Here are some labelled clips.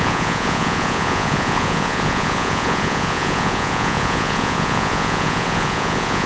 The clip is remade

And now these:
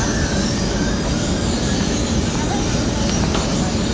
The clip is recorded